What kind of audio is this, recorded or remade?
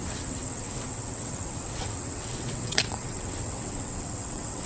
remade